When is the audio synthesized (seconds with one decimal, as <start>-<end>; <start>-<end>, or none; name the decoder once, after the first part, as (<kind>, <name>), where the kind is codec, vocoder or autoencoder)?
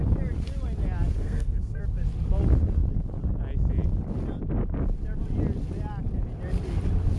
1.2-1.8 (codec, SNAC)